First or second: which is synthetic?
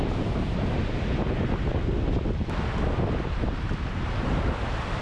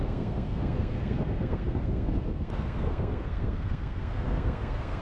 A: second